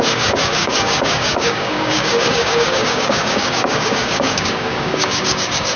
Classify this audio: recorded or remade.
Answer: remade